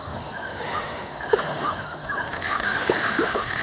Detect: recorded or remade remade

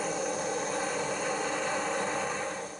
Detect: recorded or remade recorded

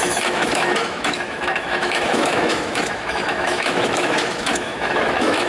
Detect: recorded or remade remade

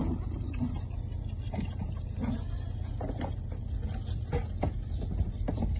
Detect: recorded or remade recorded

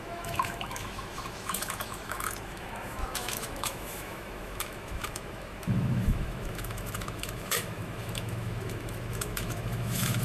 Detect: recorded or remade remade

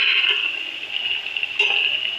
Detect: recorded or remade recorded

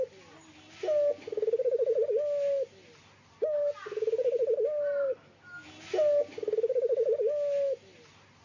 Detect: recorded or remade recorded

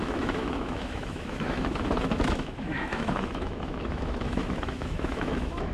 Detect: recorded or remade remade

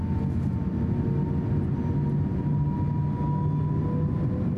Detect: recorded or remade recorded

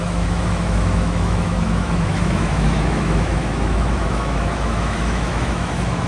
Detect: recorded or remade remade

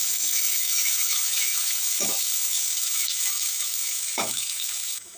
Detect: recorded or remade remade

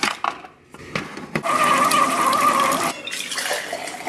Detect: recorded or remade recorded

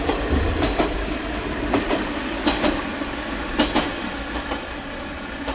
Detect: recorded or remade recorded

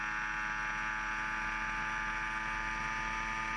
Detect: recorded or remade recorded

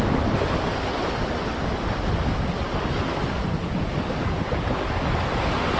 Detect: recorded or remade recorded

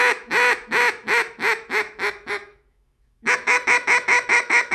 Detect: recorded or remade remade